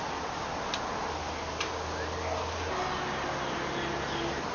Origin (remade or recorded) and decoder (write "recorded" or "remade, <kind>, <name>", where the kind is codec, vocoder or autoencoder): recorded